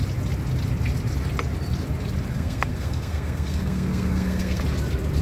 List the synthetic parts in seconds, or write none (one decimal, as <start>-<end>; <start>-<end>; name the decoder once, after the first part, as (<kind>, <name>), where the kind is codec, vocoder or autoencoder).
2.3-4.6 (codec, SNAC)